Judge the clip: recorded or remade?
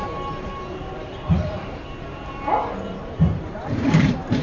remade